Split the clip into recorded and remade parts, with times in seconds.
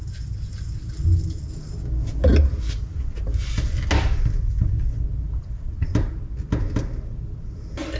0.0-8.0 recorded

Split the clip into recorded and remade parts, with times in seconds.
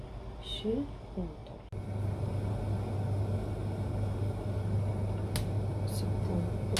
0.0-6.8 recorded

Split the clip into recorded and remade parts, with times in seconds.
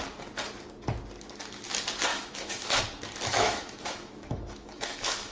0.0-2.1 recorded; 2.1-2.8 remade; 2.8-3.3 recorded; 3.3-5.3 remade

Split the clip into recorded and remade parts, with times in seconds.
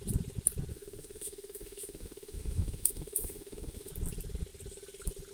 0.0-0.7 recorded; 0.7-3.9 remade; 3.9-5.3 recorded